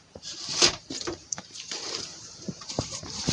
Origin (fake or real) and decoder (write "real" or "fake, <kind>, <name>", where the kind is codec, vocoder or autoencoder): fake, vocoder, BigVGAN v2